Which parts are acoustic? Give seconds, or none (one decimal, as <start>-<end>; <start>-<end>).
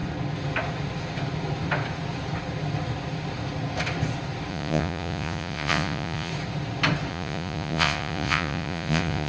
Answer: 0.0-4.5; 6.3-7.1